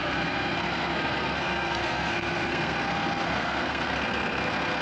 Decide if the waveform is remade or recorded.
remade